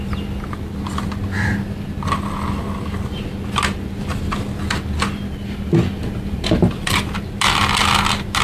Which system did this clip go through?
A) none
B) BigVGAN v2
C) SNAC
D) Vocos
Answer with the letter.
A